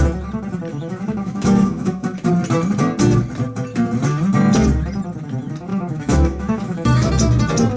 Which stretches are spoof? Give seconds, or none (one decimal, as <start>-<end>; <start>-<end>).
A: 0.7-2.3; 5.7-7.1